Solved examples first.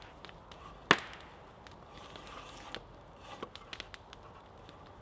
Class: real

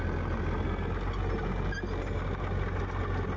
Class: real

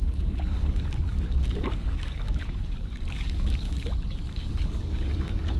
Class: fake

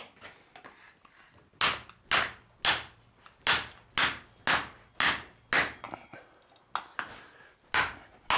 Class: real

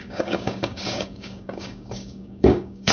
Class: fake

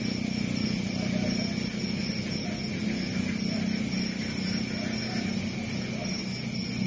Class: real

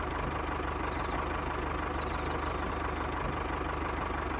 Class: real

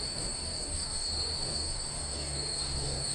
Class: fake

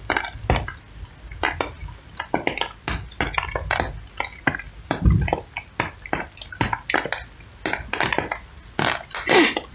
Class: real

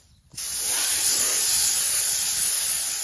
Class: real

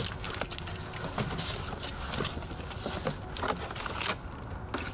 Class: real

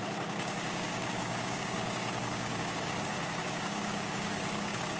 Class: fake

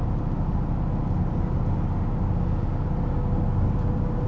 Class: real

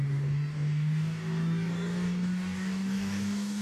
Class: fake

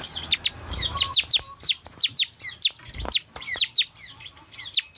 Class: real